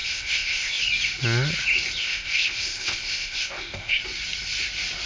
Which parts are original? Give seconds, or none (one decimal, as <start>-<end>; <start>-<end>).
0.8-2.0; 4.0-5.1